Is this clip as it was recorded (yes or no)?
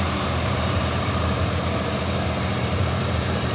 no